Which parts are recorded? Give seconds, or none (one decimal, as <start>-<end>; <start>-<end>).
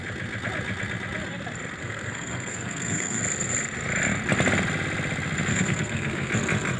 0.0-1.8; 3.2-5.5; 6.3-6.8